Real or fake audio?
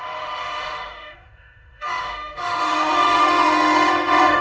fake